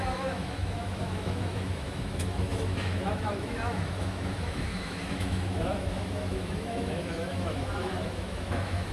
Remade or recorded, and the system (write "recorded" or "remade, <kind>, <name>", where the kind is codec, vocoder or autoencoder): remade, autoencoder, DAC-VAE